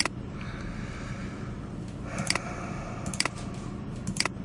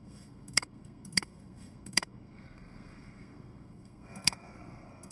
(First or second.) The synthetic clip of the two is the second